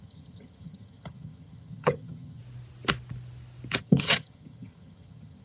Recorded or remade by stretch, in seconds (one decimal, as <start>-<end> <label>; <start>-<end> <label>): 0.0-2.4 remade; 2.4-3.8 recorded; 3.8-5.4 remade